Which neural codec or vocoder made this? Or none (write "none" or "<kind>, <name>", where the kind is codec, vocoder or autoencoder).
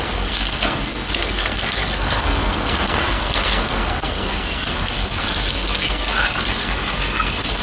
codec, SNAC